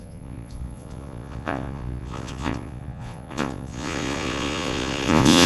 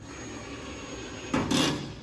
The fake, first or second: first